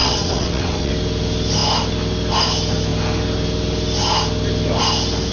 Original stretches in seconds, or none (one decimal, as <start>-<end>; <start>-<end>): 0.9-5.3